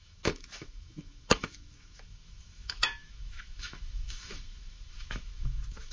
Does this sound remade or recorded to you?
remade